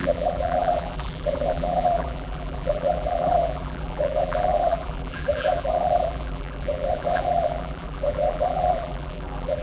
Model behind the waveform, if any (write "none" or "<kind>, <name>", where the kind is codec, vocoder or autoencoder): vocoder, BigVGAN v2